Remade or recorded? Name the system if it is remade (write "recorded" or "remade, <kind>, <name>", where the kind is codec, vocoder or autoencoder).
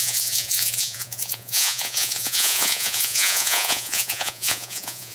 remade, vocoder, Vocos